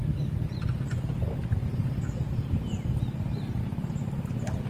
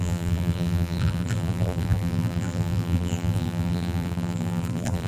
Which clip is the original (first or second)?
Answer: first